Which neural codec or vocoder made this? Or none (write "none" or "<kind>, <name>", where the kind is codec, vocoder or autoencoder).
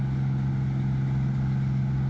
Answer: none